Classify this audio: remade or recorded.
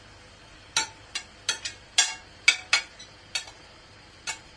recorded